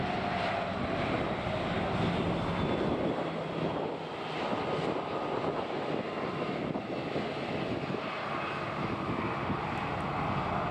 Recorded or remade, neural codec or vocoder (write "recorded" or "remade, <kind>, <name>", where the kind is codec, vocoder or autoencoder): recorded